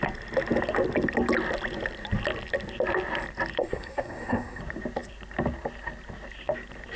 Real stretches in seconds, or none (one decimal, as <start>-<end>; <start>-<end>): 0.0-3.6; 4.6-7.0